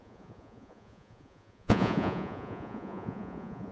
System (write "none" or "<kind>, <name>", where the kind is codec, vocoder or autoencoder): vocoder, Vocos